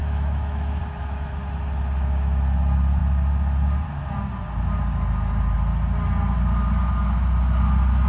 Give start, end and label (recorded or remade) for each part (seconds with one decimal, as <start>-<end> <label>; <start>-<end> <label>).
0.0-0.8 remade; 0.8-8.1 recorded